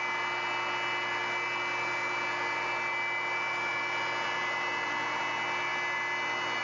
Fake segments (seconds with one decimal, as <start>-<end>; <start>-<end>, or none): none